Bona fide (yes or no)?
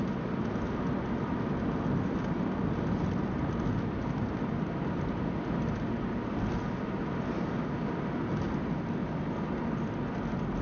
yes